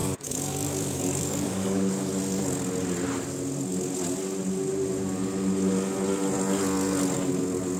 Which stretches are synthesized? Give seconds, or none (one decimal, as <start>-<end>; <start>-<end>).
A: 0.0-2.1

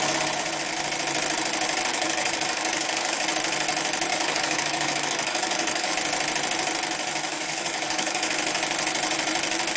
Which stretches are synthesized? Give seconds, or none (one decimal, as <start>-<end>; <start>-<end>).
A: 1.9-3.2; 4.1-5.9; 7.3-8.3

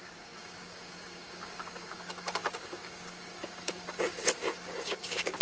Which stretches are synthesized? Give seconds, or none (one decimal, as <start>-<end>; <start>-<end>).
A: 0.0-5.4

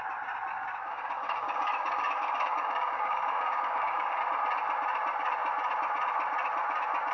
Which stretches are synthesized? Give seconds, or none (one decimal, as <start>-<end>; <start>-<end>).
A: 0.5-4.2